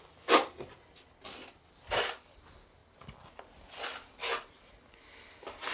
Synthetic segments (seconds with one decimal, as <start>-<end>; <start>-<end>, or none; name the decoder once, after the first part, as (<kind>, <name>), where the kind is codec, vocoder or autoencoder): none

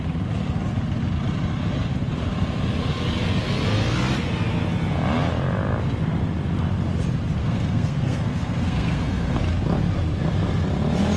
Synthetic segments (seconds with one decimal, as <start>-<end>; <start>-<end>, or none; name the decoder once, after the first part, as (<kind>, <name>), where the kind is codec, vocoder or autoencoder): 7.4-9.4 (codec, SNAC)